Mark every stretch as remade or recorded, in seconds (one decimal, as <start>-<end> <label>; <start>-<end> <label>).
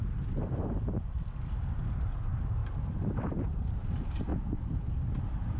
0.0-4.3 remade; 4.3-5.6 recorded